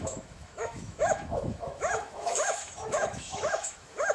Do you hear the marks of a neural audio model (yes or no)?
yes